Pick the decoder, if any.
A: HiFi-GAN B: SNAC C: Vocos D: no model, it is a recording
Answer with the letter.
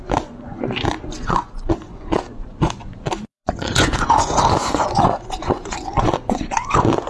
C